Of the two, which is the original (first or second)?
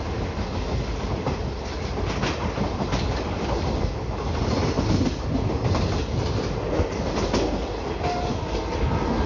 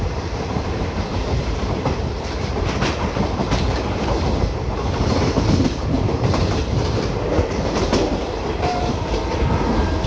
first